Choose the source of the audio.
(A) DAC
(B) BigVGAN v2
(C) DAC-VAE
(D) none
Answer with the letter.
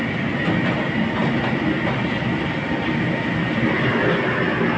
D